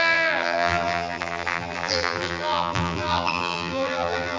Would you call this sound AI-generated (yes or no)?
yes